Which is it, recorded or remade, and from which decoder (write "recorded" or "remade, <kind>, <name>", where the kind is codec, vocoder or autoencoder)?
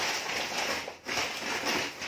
recorded